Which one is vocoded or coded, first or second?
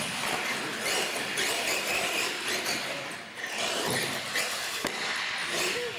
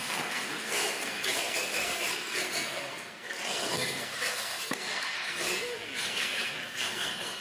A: second